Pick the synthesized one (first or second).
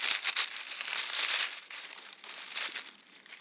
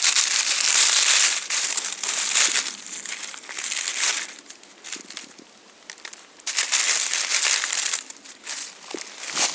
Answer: first